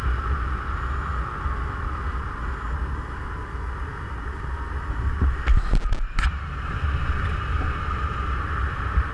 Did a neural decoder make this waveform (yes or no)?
no